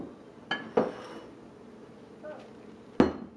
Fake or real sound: real